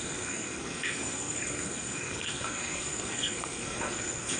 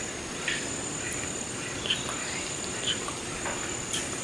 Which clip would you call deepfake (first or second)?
first